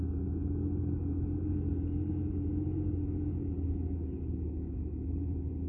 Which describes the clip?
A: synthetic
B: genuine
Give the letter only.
B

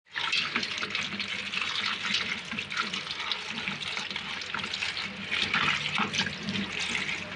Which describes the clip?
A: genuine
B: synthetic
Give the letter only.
A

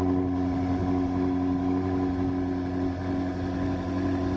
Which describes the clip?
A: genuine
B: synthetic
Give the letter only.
A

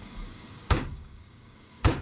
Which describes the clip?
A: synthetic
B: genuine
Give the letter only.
A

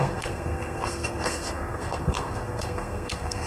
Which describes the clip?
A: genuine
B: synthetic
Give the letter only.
B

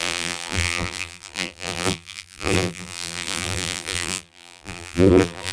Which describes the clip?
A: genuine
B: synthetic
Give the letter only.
B